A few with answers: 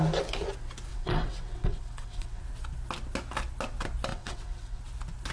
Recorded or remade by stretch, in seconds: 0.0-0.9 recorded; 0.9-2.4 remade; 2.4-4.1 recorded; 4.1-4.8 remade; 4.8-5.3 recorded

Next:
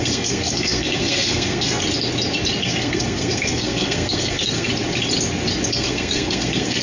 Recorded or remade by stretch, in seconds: 0.0-1.8 remade; 1.8-2.6 recorded; 2.6-4.7 remade; 4.7-5.7 recorded; 5.7-6.8 remade

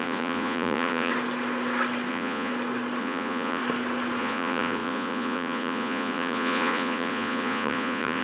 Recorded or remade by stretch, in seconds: 0.0-1.1 remade; 1.1-2.1 recorded; 2.1-2.5 remade; 2.5-3.0 recorded; 3.0-3.6 remade; 3.6-4.2 recorded; 4.2-8.2 remade

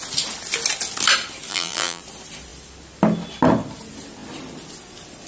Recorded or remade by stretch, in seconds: 0.0-1.5 recorded; 1.5-2.0 remade; 2.0-5.3 recorded

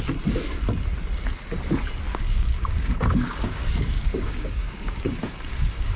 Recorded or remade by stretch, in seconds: 0.0-2.1 recorded; 2.1-6.0 remade

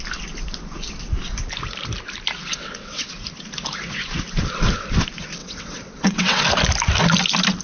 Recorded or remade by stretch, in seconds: 0.0-2.5 recorded; 2.5-3.1 remade; 3.1-5.4 recorded; 5.4-6.4 remade; 6.4-7.6 recorded

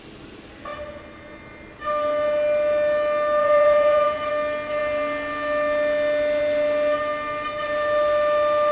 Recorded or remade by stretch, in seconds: 0.0-3.4 recorded; 3.4-4.3 remade; 4.3-8.7 recorded